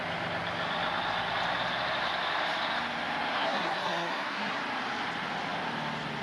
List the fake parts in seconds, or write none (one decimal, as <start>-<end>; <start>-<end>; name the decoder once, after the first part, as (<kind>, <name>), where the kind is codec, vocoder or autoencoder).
3.3-4.6 (codec, SNAC)